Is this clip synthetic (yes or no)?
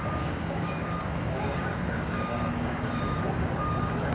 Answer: yes